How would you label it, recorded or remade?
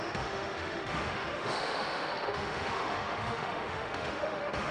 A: remade